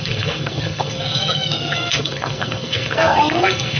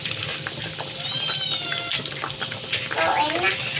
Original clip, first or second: second